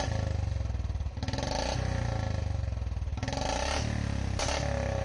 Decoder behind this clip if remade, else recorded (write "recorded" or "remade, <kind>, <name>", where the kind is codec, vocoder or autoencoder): recorded